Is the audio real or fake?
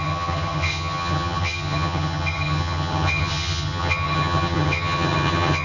fake